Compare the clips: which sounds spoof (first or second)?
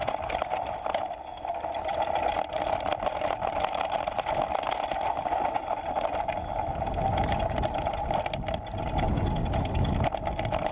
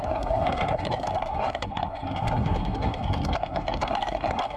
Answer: second